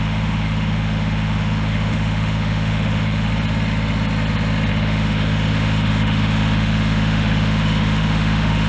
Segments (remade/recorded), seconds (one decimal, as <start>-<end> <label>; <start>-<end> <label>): 0.0-3.3 remade; 3.3-4.7 recorded; 4.7-8.7 remade